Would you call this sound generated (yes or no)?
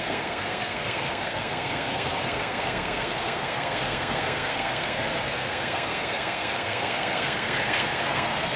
yes